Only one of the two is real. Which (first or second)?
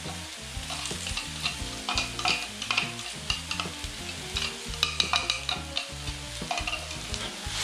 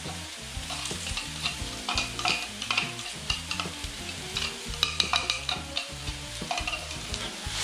first